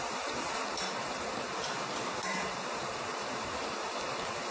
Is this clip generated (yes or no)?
yes